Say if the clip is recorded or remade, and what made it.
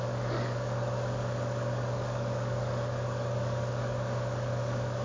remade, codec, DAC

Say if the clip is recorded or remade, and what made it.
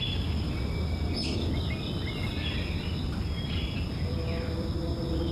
recorded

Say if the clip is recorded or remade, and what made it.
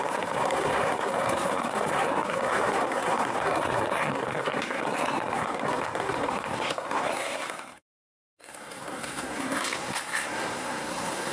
remade, codec, SNAC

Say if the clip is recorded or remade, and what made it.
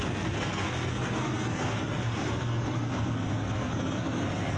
remade, codec, SNAC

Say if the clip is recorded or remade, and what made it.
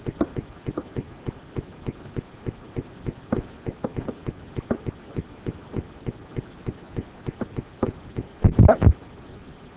recorded